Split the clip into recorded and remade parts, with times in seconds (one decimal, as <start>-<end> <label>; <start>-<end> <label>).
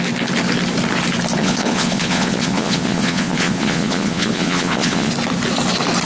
0.0-1.4 recorded; 1.4-5.1 remade; 5.1-6.1 recorded